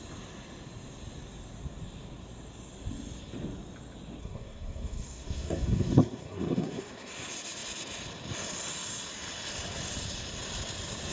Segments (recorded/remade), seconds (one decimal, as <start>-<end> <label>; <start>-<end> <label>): 0.0-4.2 recorded; 4.2-7.1 remade; 7.1-11.1 recorded